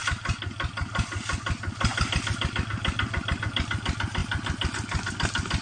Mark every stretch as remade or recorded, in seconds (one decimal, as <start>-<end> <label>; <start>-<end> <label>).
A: 0.0-5.6 recorded